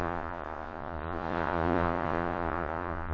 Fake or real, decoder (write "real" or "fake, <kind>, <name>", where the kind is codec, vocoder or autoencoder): fake, vocoder, Vocos